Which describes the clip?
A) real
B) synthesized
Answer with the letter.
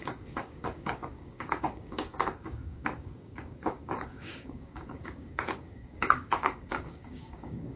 B